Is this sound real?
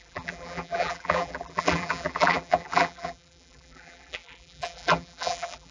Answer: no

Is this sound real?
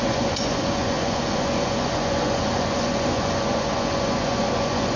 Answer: no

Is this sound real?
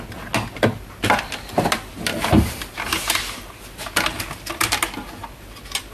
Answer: yes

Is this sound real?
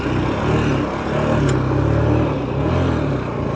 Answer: yes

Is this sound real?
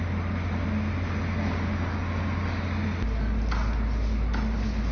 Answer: yes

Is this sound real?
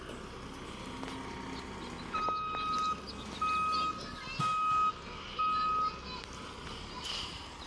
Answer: yes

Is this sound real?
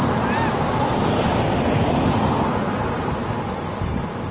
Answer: yes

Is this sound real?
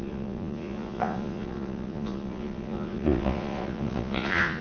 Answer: no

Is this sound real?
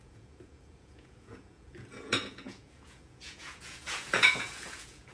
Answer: no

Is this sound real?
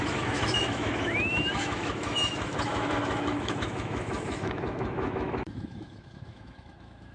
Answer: no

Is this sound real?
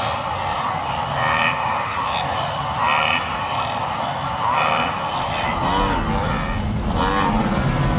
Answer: yes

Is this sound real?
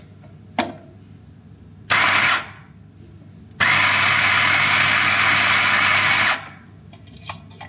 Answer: yes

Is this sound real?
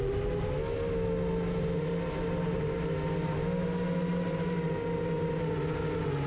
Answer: yes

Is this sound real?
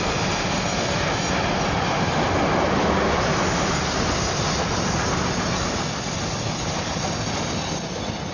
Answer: yes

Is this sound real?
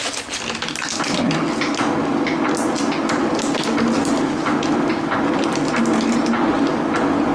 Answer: yes